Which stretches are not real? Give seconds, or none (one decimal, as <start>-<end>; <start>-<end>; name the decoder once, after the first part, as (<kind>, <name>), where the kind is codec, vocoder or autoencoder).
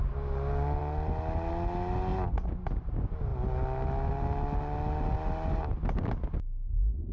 none